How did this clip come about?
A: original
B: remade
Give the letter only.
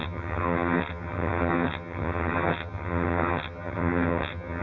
B